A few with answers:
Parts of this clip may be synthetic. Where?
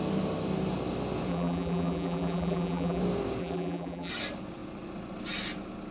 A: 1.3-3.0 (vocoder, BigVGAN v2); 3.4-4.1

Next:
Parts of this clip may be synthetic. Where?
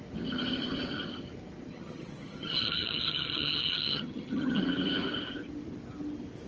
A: 1.7-4.6 (vocoder, HiFi-GAN)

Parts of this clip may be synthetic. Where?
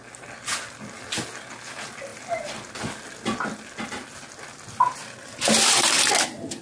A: none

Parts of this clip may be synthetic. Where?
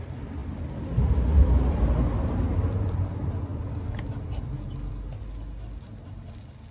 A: none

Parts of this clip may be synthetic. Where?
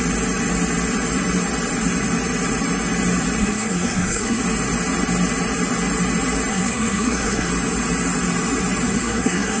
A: 3.4-4.4 (codec, SNAC); 6.5-7.5; 8.9-9.6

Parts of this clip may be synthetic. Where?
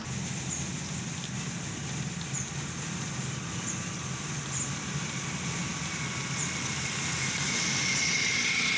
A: none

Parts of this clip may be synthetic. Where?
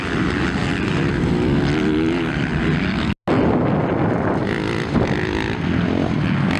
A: none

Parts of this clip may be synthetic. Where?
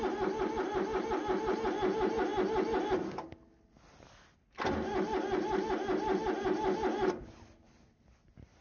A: none